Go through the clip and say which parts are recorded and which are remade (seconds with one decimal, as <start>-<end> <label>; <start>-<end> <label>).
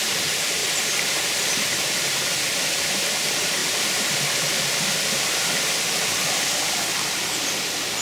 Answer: 0.0-3.6 recorded; 3.6-5.5 remade; 5.5-8.0 recorded